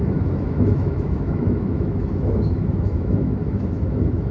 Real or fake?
fake